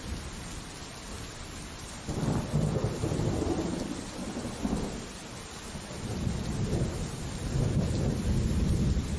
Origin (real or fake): fake